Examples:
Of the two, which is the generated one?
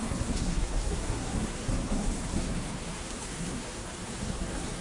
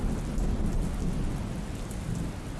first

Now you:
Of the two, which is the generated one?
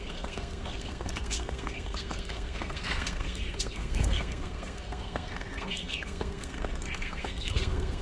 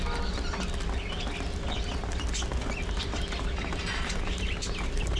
first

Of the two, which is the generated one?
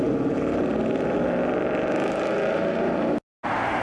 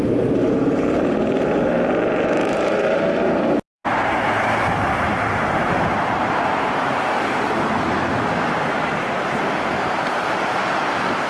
second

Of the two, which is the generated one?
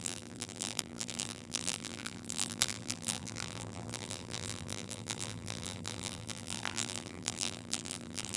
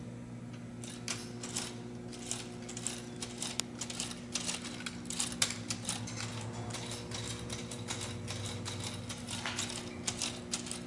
first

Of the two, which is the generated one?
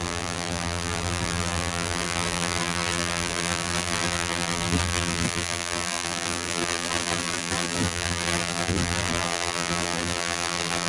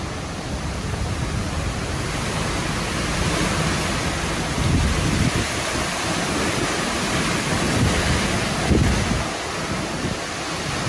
first